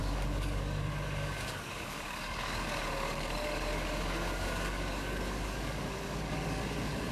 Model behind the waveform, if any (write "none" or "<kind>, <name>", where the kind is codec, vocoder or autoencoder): codec, DAC